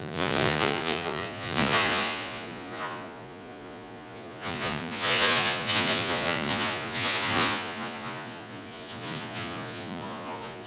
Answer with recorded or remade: remade